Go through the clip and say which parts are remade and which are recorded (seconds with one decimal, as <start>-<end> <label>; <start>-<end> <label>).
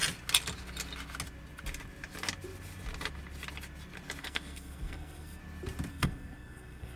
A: 0.0-4.2 recorded; 4.2-5.4 remade; 5.4-5.9 recorded; 5.9-7.0 remade